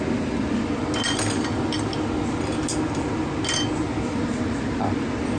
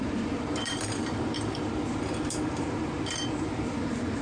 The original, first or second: first